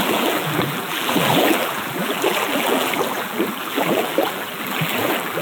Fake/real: fake